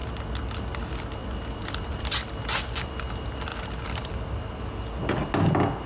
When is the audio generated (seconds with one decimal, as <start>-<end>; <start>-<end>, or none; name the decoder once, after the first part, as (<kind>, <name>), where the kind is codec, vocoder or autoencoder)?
1.2-2.9 (vocoder, BigVGAN v2); 3.5-4.1